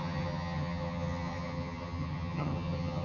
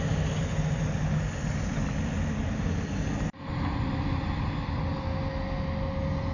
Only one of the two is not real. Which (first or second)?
first